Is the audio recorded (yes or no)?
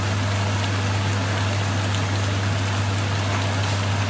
yes